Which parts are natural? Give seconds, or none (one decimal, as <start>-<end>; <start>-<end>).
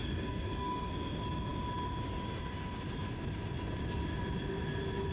0.9-5.1